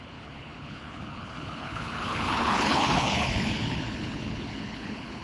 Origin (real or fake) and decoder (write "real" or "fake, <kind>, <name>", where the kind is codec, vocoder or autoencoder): fake, codec, HILCodec